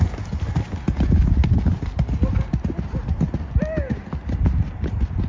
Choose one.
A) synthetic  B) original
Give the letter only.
B